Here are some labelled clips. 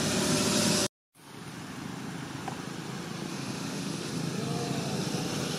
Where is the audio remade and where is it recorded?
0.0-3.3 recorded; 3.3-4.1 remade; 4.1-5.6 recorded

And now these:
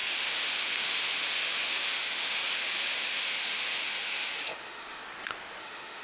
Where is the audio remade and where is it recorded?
0.0-5.0 remade; 5.0-5.6 recorded; 5.6-6.0 remade

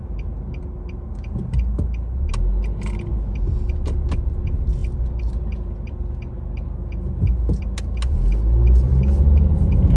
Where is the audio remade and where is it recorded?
0.0-10.0 recorded